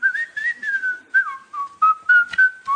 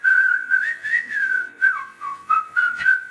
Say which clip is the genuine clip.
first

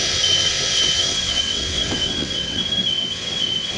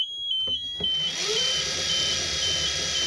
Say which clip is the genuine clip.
second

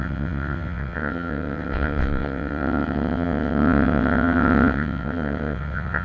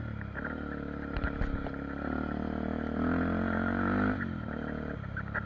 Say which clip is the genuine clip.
second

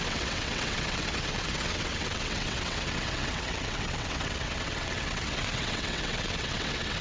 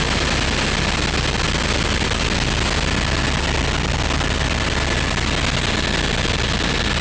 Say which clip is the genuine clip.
second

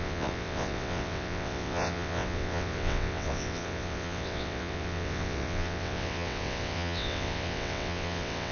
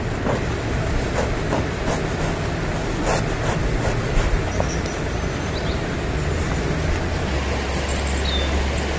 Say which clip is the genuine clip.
second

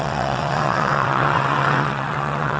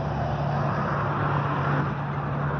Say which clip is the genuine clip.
second